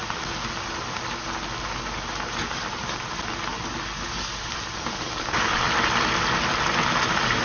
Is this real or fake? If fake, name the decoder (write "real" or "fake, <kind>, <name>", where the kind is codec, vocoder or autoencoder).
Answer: real